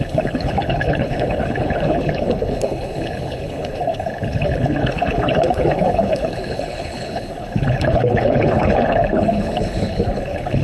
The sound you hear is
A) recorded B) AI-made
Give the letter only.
B